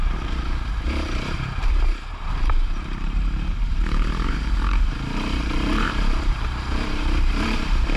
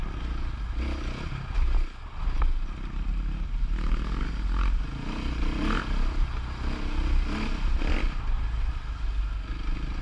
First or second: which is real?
second